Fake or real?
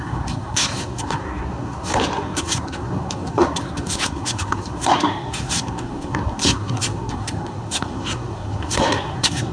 fake